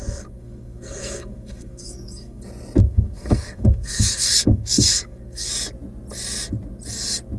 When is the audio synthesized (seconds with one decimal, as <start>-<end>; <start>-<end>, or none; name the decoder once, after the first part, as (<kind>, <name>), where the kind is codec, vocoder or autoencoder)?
0.0-2.4 (codec, SNAC); 2.8-5.5